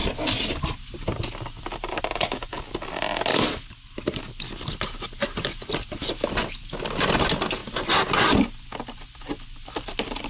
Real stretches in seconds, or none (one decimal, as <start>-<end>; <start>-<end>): 0.0-10.3